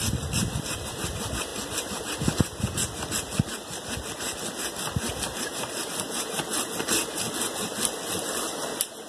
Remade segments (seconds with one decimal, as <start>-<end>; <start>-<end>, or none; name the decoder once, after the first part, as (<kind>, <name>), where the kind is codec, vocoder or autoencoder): none

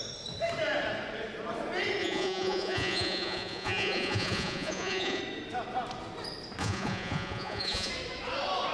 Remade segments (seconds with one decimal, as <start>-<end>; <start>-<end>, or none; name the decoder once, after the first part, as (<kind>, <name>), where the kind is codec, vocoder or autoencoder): 2.0-5.2 (vocoder, Vocos); 6.6-7.9

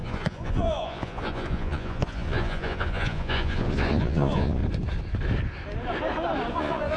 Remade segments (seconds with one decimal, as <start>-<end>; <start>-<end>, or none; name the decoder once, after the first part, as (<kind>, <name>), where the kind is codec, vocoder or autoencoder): 0.0-4.6 (vocoder, Vocos); 6.5-7.0